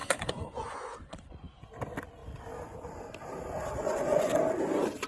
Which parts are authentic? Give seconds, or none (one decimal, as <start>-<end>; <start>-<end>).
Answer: 1.8-3.8; 4.4-5.1